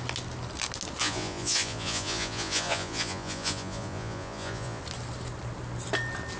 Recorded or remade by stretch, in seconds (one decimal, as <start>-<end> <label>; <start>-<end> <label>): 0.0-1.0 recorded; 1.0-4.8 remade; 4.8-6.4 recorded